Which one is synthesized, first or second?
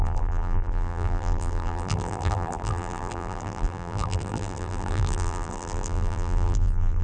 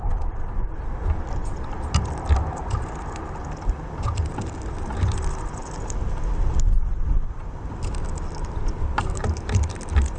first